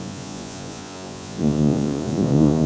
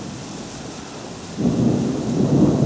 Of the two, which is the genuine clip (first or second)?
second